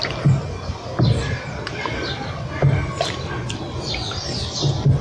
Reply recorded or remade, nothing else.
recorded